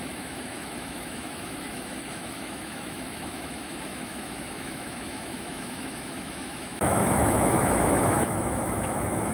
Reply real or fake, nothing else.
fake